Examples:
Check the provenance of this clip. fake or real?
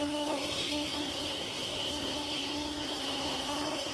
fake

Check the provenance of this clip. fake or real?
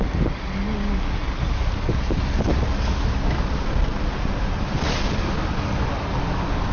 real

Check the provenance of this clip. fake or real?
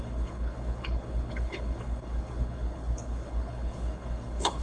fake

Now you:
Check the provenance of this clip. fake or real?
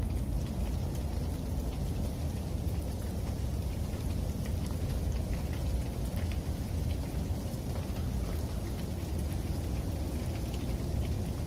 real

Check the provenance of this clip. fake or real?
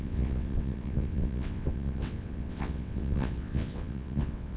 fake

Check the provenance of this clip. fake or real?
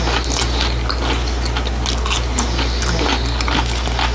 real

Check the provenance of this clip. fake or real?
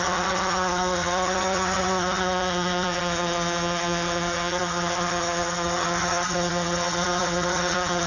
fake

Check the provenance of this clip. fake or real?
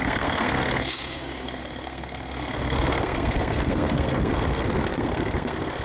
fake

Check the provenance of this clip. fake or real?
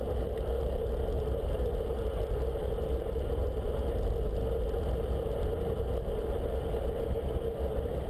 real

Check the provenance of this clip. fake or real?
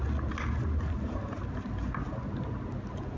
real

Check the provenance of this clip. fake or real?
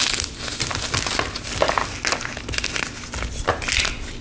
real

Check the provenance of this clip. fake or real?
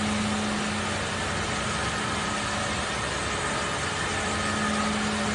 real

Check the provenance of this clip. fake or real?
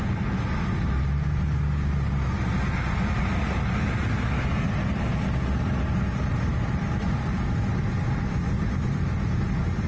real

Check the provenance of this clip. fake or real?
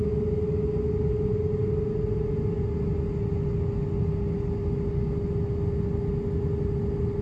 real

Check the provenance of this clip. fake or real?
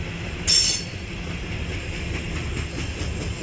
real